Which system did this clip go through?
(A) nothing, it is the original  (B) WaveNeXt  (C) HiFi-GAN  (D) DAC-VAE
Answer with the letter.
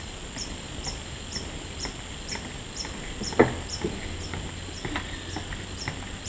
A